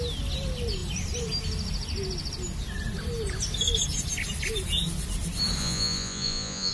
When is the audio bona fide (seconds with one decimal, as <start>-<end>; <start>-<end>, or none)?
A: 0.0-5.6